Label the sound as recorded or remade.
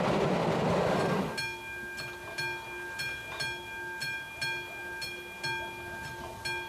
recorded